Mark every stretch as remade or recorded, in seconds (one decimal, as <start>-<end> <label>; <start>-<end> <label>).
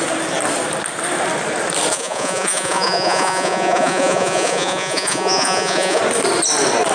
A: 0.0-1.9 recorded; 1.9-6.0 remade; 6.0-6.9 recorded